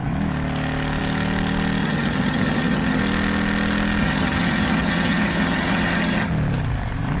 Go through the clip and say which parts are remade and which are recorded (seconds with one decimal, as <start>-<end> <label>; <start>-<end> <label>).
0.0-1.8 recorded; 1.8-3.0 remade; 3.0-4.0 recorded; 4.0-6.3 remade; 6.3-7.2 recorded